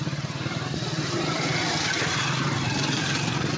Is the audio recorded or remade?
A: remade